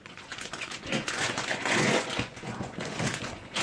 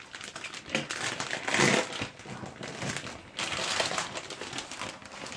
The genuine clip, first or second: second